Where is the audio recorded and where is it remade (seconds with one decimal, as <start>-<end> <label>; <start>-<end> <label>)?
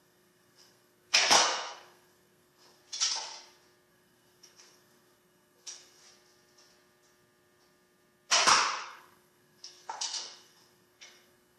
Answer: 0.0-2.8 remade; 2.8-3.9 recorded; 3.9-6.0 remade; 6.0-8.8 recorded; 8.8-11.6 remade